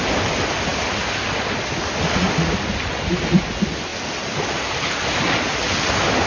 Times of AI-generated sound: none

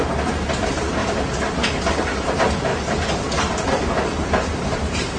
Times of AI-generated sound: 1.0-1.8 (vocoder, BigVGAN v2); 2.7-3.5